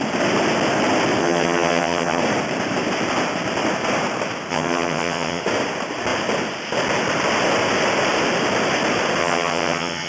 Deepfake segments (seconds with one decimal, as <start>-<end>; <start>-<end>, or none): 1.2-2.2; 4.5-5.4; 9.2-10.1